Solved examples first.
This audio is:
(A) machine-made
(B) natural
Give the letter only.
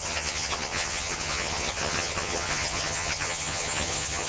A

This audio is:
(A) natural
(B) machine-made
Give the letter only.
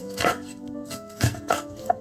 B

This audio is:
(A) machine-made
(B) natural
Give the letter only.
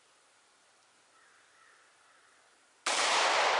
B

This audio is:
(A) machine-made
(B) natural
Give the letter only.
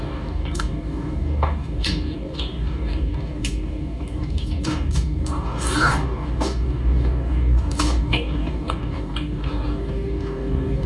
A